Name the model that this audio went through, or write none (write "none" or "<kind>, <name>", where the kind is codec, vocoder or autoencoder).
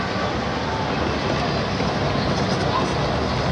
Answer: none